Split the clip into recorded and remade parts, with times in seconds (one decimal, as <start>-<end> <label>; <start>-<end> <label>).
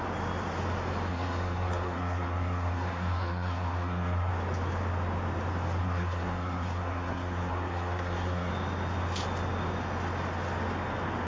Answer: 0.0-1.1 recorded; 1.1-4.3 remade; 4.3-5.8 recorded; 5.8-8.5 remade; 8.5-11.3 recorded